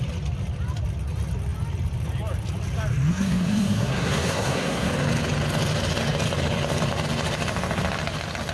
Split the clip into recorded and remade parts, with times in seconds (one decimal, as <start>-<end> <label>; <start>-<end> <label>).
0.0-3.1 recorded; 3.1-4.9 remade; 4.9-8.5 recorded